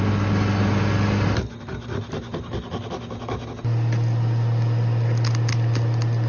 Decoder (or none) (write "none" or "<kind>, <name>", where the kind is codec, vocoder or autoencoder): none